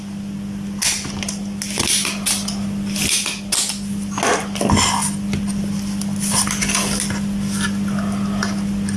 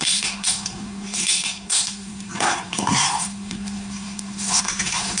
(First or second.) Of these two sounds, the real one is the first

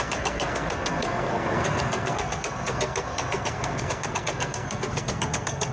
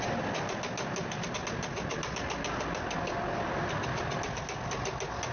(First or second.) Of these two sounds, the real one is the second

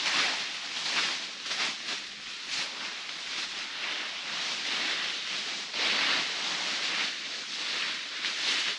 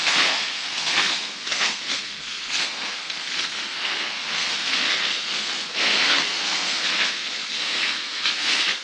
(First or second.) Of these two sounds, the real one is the first